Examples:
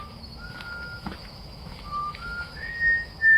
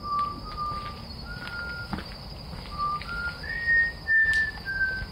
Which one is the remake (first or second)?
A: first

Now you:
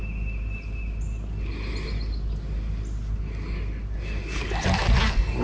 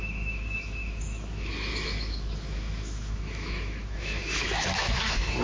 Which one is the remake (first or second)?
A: second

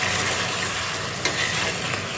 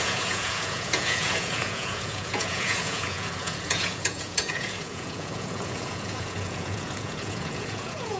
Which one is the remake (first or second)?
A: second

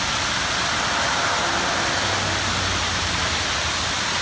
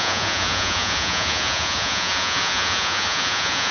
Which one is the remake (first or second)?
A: second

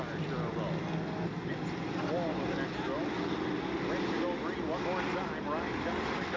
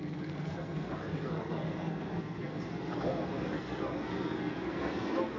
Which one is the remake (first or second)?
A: second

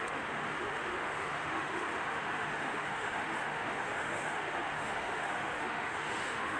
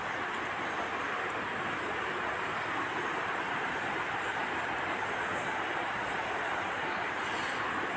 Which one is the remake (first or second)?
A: first